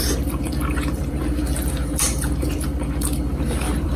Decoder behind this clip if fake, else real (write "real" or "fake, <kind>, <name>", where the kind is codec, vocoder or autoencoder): fake, vocoder, BigVGAN v2